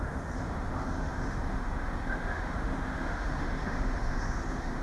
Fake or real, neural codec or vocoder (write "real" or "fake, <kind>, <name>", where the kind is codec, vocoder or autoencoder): fake, autoencoder, DAC-VAE